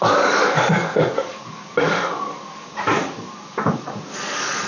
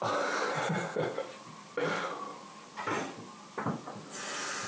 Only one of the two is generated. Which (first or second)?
first